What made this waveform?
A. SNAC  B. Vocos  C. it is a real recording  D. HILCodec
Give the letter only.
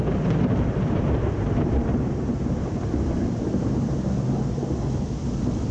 C